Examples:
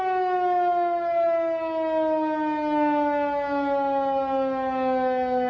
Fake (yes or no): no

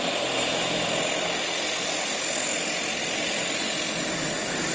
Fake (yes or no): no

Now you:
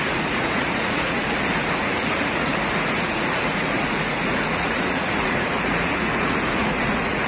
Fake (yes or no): yes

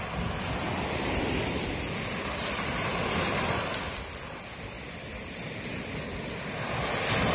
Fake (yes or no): no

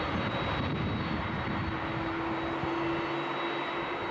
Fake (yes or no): no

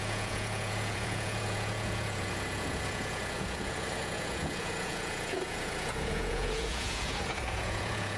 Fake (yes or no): yes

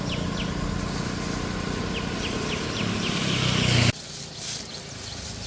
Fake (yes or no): no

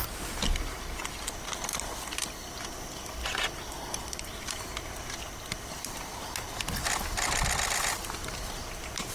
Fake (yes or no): no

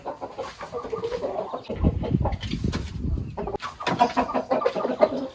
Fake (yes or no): no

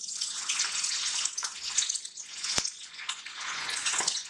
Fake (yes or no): yes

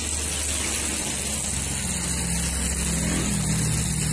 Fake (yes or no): no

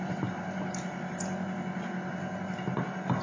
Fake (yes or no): no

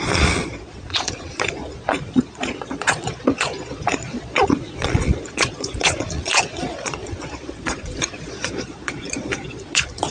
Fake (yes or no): yes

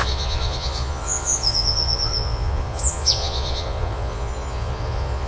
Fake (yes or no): yes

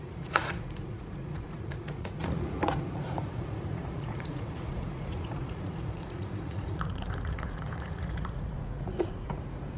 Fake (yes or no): yes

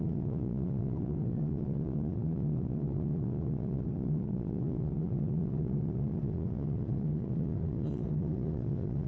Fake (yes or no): yes